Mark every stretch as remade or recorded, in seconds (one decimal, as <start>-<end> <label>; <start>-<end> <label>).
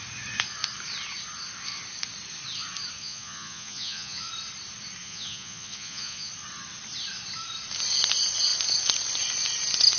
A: 0.0-3.0 recorded; 3.0-4.3 remade; 4.3-5.0 recorded; 5.0-6.3 remade; 6.3-10.0 recorded